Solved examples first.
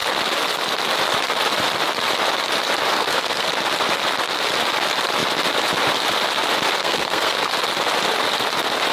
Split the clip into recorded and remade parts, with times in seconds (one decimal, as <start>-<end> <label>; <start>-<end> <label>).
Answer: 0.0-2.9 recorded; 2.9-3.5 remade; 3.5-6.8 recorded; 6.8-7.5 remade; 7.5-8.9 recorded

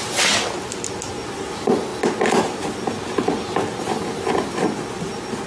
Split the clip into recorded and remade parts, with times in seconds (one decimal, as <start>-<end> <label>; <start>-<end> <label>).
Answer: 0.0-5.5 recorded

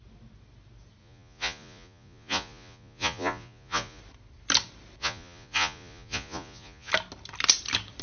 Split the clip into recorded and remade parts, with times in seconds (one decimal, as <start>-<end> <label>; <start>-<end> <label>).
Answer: 0.0-1.0 recorded; 1.0-4.0 remade; 4.0-5.0 recorded; 5.0-6.9 remade; 6.9-8.0 recorded